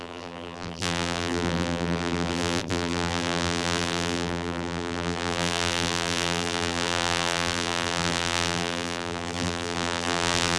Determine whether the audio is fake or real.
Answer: fake